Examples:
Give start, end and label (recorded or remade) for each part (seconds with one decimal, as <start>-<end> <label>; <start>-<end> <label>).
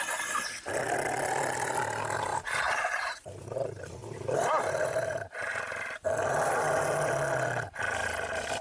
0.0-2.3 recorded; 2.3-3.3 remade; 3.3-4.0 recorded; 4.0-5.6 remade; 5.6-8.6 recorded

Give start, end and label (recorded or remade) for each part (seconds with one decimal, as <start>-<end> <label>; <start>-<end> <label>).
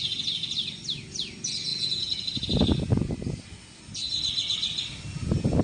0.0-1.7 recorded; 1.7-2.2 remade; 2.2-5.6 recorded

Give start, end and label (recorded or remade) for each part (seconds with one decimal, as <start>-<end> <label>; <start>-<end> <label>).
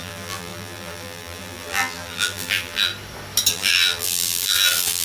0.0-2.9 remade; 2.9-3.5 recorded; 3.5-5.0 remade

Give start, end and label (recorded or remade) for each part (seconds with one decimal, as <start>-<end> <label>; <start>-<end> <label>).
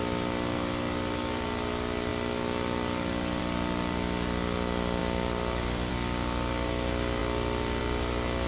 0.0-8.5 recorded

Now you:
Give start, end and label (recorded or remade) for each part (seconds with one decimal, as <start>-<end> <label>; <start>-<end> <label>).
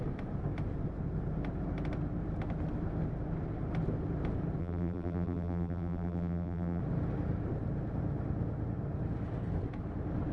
0.0-4.6 recorded; 4.6-6.8 remade; 6.8-10.3 recorded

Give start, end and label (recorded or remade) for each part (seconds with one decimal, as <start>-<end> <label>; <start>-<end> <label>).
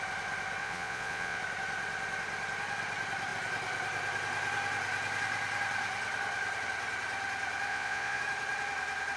0.0-0.6 recorded; 0.6-1.4 remade; 1.4-7.7 recorded; 7.7-8.2 remade; 8.2-9.2 recorded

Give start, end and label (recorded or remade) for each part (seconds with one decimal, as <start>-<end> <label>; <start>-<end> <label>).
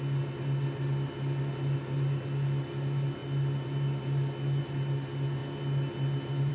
0.0-6.5 recorded